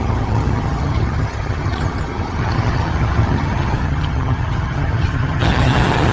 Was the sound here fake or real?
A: fake